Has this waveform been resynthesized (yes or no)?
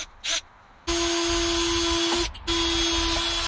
no